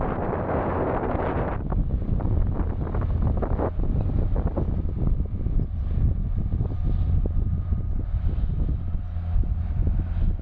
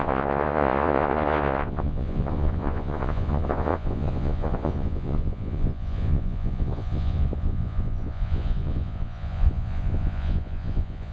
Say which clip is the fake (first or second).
second